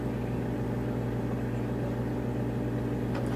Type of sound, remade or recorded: recorded